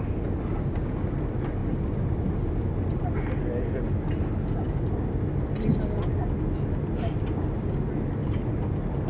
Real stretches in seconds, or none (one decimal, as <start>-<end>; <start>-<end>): 0.0-9.1